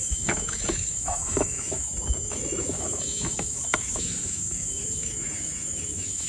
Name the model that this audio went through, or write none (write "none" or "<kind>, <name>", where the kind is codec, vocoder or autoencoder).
autoencoder, DAC-VAE